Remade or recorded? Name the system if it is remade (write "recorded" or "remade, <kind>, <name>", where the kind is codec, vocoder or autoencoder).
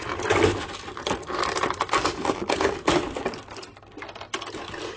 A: recorded